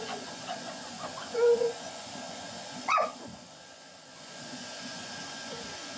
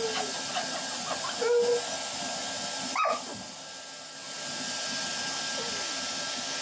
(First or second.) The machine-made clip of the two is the first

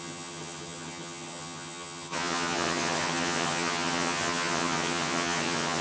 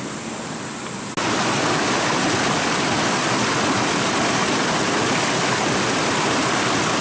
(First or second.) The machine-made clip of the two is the first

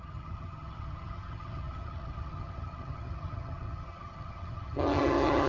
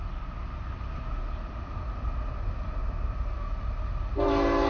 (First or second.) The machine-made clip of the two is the first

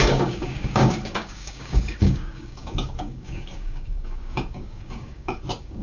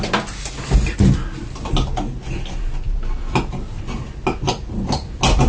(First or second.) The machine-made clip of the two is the first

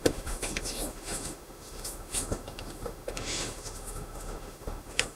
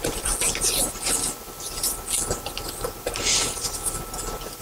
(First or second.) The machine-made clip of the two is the first